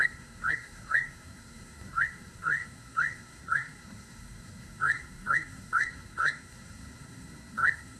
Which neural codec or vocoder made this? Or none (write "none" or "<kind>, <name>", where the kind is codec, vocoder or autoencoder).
codec, SNAC